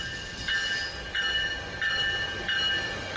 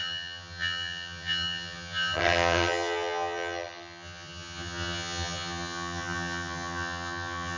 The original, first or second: first